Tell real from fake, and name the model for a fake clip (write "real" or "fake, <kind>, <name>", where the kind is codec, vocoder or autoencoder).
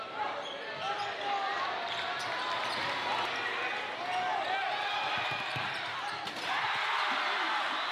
real